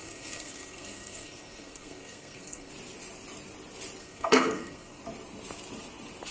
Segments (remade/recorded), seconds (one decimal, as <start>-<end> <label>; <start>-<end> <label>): 0.0-2.7 remade; 2.7-4.0 recorded; 4.0-5.0 remade; 5.0-6.3 recorded